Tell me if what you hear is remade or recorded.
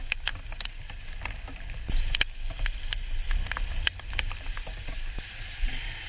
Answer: recorded